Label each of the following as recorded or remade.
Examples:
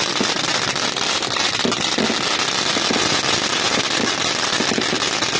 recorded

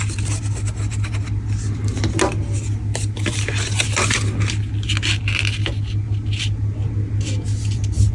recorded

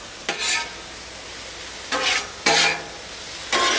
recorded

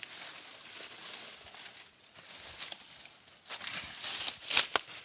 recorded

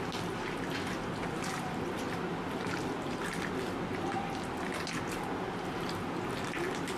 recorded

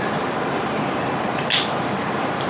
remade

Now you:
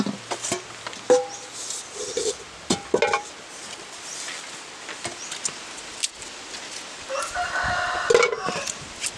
recorded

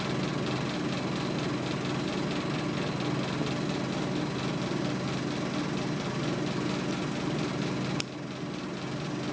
recorded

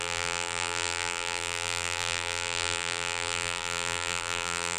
remade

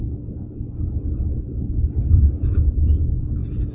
remade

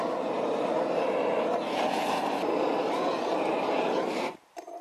recorded